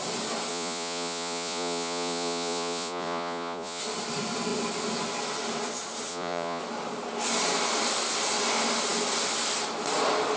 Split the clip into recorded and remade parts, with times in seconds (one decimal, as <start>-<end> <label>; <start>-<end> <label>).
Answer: 0.0-0.5 recorded; 0.5-3.8 remade; 3.8-6.1 recorded; 6.1-6.6 remade; 6.6-10.4 recorded